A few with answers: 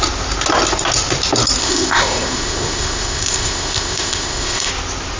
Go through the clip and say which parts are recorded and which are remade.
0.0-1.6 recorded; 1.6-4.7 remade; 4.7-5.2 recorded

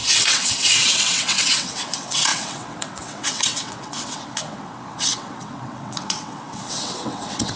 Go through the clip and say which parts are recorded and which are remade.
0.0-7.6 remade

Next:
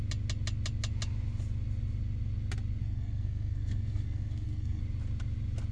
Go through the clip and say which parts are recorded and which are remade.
0.0-2.8 recorded; 2.8-4.8 remade; 4.8-5.7 recorded